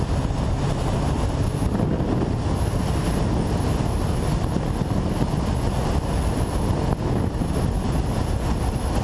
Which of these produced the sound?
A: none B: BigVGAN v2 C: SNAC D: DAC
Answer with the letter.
A